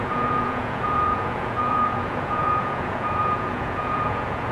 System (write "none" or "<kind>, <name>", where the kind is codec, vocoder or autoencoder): vocoder, Vocos